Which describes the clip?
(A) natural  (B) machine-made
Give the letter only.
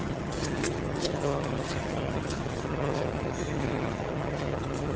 B